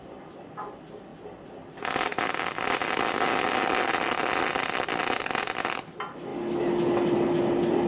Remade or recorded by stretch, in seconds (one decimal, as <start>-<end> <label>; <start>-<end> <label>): 0.0-7.9 recorded